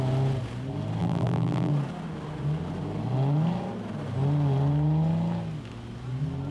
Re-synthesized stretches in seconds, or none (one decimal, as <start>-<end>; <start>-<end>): 1.0-1.7